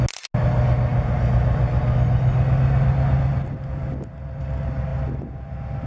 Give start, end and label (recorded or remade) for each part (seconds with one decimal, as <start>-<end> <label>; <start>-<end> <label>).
0.0-5.9 recorded